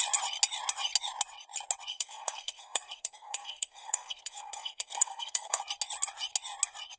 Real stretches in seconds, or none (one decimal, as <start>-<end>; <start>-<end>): 0.0-1.9; 5.6-7.0